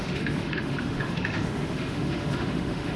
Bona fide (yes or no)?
no